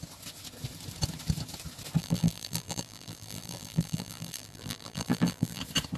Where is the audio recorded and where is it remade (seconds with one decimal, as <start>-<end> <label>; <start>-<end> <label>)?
0.0-2.0 recorded; 2.0-5.6 remade; 5.6-6.0 recorded